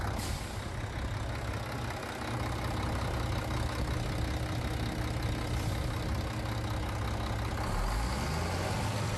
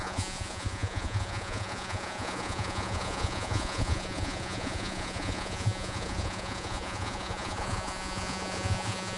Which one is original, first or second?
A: first